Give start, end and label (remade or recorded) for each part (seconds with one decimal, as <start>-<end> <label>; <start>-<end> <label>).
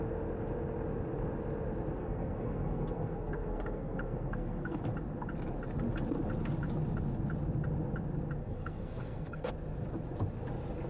0.0-2.0 recorded; 2.0-4.8 remade; 4.8-8.4 recorded; 8.4-9.5 remade; 9.5-10.9 recorded